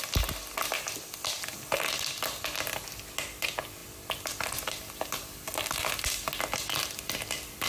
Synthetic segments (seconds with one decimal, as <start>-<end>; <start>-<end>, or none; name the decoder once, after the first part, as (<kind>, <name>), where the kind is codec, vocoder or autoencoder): none